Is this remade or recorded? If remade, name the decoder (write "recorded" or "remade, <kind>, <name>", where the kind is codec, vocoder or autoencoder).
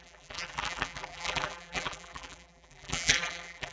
remade, vocoder, BigVGAN v2